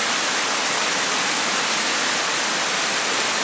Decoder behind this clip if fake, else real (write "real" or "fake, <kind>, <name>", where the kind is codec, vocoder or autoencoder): real